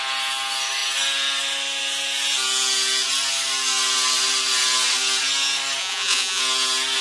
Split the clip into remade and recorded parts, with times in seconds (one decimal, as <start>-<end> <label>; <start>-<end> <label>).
0.0-5.8 recorded; 5.8-6.4 remade; 6.4-7.0 recorded

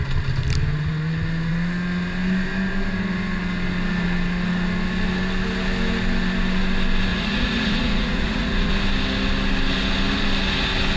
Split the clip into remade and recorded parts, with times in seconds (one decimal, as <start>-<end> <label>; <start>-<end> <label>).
0.0-7.1 recorded; 7.1-8.7 remade; 8.7-11.0 recorded

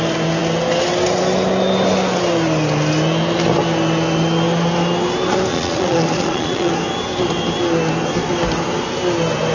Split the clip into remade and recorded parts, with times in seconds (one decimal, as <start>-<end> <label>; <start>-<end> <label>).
0.0-5.5 recorded; 5.5-6.7 remade; 6.7-9.5 recorded

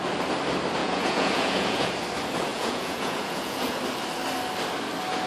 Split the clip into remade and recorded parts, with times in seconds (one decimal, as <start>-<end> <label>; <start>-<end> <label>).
0.0-0.8 recorded; 0.8-1.9 remade; 1.9-2.5 recorded; 2.5-3.8 remade; 3.8-5.3 recorded

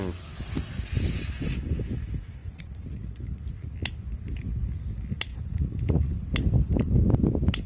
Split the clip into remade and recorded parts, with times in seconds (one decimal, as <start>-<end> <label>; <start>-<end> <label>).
0.0-2.4 recorded; 2.4-3.7 remade; 3.7-5.3 recorded; 5.3-6.1 remade; 6.1-7.7 recorded